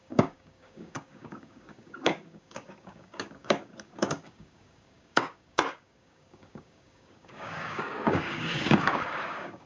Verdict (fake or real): fake